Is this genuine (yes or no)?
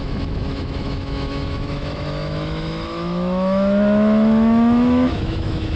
no